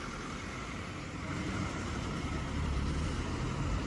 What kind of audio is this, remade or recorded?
remade